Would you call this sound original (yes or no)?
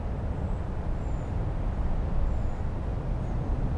yes